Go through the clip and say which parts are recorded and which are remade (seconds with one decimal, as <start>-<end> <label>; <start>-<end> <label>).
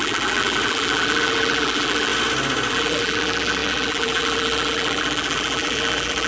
0.0-2.1 remade; 2.1-2.7 recorded; 2.7-6.3 remade